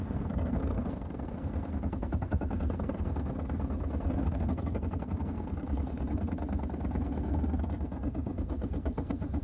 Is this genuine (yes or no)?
no